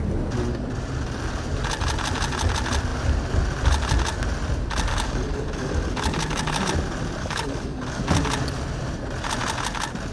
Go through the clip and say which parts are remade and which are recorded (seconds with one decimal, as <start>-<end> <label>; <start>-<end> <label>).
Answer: 0.0-4.9 recorded; 4.9-6.6 remade; 6.6-7.2 recorded; 7.2-8.0 remade; 8.0-10.1 recorded